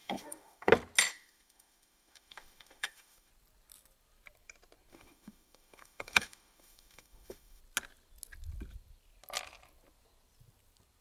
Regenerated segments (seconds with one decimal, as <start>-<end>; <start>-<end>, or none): 0.0-0.7; 1.1-3.3; 4.9-7.6